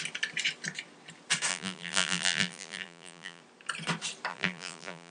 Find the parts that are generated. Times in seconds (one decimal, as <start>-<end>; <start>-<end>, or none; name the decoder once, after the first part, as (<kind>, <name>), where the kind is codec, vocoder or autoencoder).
1.5-3.4 (vocoder, BigVGAN v2); 4.3-5.1

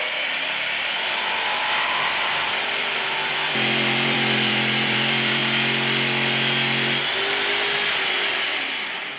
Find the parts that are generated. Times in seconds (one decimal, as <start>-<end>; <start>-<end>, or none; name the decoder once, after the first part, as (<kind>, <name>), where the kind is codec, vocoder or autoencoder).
0.0-5.4 (vocoder, BigVGAN v2)